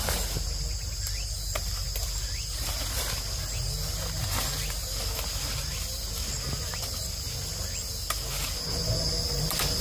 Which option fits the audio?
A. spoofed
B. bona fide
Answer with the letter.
B